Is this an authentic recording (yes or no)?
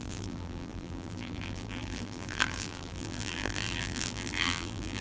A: no